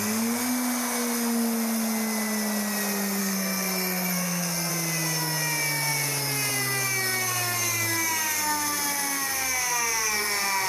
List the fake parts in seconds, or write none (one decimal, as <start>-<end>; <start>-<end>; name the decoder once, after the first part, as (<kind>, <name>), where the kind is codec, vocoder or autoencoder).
3.2-4.7 (codec, SNAC)